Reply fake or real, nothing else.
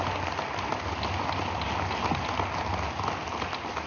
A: real